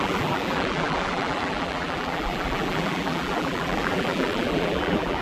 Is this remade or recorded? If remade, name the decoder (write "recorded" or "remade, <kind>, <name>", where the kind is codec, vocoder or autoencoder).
remade, vocoder, BigVGAN v2